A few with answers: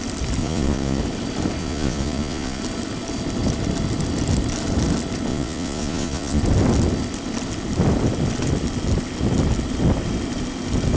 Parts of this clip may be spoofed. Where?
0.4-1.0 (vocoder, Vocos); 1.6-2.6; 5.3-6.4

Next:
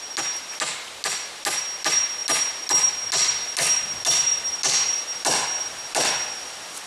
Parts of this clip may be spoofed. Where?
none

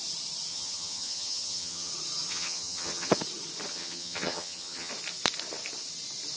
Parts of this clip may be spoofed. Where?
0.5-1.9 (vocoder, HiFi-GAN); 2.3-3.2; 3.7-4.9

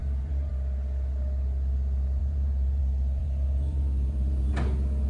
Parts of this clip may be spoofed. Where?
0.0-0.5 (vocoder, BigVGAN v2); 2.2-2.8; 3.2-4.5